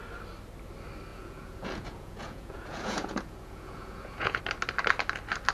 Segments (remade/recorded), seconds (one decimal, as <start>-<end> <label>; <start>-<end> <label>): 0.0-1.1 recorded; 1.1-4.4 remade; 4.4-5.5 recorded